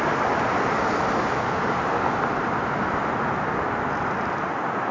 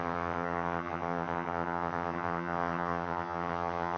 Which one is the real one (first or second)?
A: first